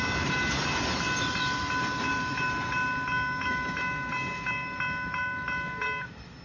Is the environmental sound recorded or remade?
recorded